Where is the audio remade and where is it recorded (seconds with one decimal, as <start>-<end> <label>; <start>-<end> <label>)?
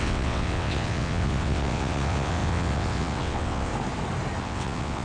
0.0-3.7 remade; 3.7-4.4 recorded; 4.4-5.0 remade